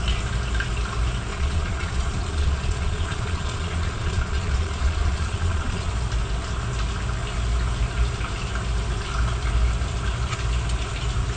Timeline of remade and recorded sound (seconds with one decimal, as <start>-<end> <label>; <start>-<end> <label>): 0.0-1.3 recorded; 1.3-5.9 remade; 5.9-11.4 recorded